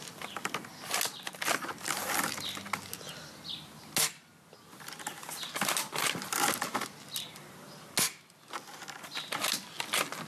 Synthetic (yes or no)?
no